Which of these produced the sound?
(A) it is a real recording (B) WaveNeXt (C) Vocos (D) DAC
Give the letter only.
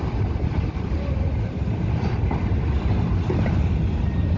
A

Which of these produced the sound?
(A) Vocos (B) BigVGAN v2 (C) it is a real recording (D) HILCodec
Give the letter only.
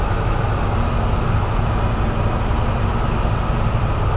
C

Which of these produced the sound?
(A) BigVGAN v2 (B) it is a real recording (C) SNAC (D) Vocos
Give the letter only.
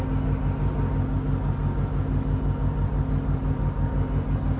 B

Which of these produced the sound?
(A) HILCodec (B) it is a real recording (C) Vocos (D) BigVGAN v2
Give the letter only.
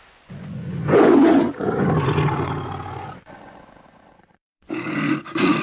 C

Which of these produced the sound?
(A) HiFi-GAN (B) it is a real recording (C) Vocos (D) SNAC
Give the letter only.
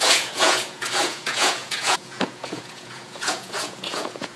C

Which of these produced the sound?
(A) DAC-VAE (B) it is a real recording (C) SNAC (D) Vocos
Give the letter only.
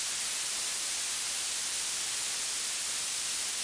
B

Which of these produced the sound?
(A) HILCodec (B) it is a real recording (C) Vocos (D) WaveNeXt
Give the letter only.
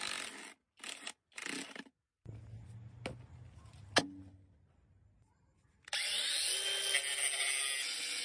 B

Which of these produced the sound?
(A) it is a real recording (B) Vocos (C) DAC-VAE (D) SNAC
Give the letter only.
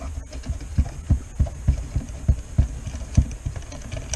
A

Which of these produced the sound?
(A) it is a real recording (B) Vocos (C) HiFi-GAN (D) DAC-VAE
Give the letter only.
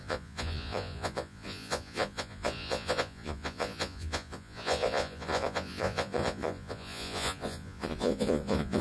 B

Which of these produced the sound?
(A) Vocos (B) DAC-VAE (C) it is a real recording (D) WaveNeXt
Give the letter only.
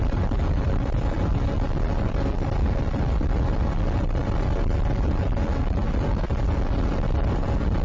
C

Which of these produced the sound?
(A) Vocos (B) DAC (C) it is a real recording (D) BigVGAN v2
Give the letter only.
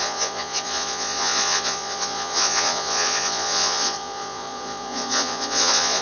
A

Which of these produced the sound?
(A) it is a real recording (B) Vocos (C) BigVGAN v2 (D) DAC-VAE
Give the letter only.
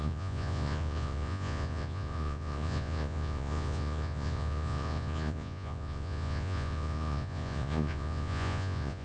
B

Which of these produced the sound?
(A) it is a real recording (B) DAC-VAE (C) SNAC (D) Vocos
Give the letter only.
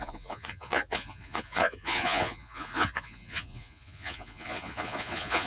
D